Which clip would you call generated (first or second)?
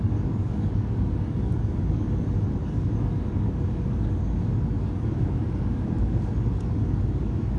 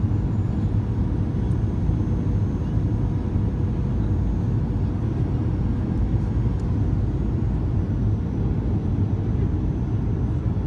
first